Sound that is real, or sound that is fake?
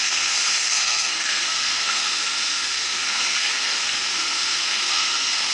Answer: fake